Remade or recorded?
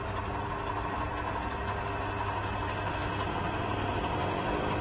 recorded